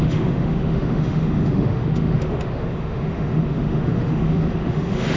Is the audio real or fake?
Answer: fake